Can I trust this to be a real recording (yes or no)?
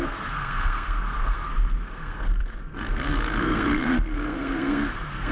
no